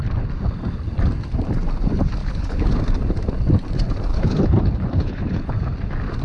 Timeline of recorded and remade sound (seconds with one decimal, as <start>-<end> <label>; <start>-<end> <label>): 0.0-2.2 recorded; 2.2-2.8 remade; 2.8-4.1 recorded; 4.1-5.5 remade; 5.5-6.2 recorded